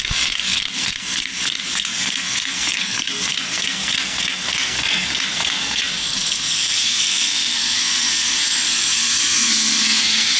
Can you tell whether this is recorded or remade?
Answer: remade